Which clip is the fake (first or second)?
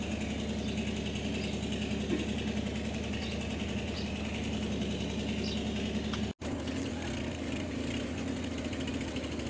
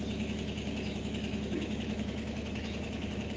second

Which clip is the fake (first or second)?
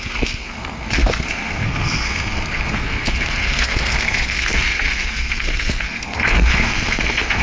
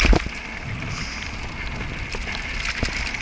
first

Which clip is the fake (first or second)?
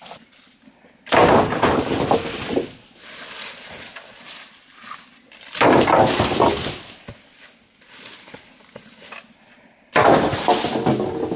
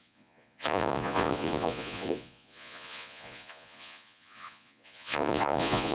second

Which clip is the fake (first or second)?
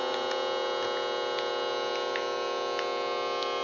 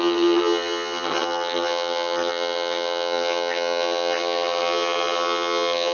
second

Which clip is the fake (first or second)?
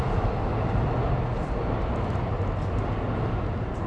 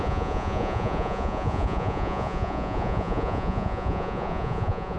second